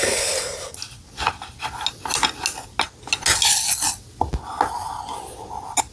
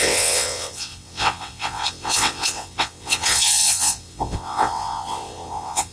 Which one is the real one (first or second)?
first